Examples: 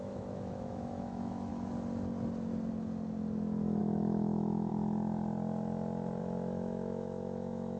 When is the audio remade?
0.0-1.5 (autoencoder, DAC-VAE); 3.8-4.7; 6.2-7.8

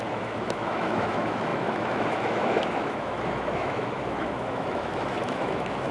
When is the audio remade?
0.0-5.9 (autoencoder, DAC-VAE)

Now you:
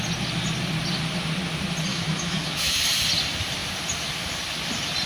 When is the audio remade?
1.9-2.8 (autoencoder, DAC-VAE)

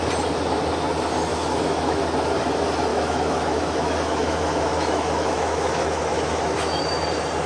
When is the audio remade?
1.3-2.0 (autoencoder, DAC-VAE); 2.9-6.8

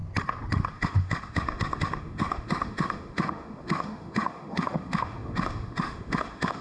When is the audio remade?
0.7-6.6 (autoencoder, DAC-VAE)

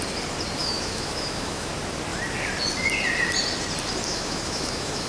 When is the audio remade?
0.6-1.7 (autoencoder, DAC-VAE); 4.1-5.1

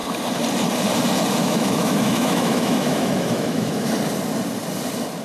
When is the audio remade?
1.4-3.9 (autoencoder, DAC-VAE)

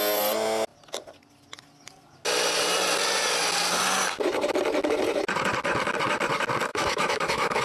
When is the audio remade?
6.7-7.6 (autoencoder, DAC-VAE)